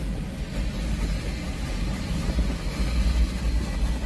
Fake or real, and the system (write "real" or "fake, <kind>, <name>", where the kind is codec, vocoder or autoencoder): real